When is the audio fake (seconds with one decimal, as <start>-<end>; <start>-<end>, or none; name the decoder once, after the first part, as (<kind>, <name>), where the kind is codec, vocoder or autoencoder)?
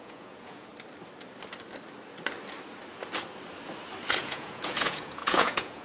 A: 0.0-0.7 (vocoder, Vocos); 4.2-5.8